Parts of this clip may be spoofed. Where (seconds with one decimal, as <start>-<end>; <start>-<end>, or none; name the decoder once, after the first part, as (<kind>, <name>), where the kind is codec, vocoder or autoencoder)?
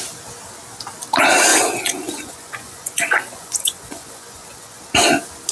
1.5-4.8 (vocoder, Vocos)